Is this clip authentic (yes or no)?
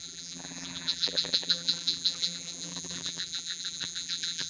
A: no